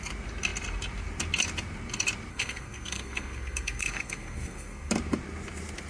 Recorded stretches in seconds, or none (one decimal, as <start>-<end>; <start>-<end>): 0.0-2.3; 4.9-5.9